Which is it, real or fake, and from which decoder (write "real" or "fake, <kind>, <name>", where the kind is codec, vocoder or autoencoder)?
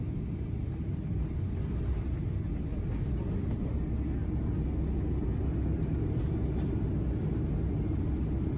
real